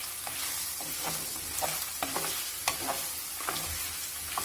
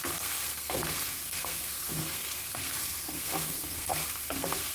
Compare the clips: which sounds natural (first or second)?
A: first